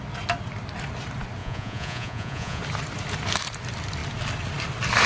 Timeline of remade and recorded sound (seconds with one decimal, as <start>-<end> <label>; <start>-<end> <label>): 0.0-1.4 recorded; 1.4-2.6 remade; 2.6-5.1 recorded